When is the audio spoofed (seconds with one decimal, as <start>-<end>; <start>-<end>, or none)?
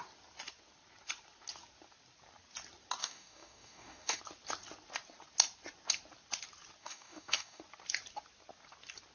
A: 3.0-4.2; 6.8-7.6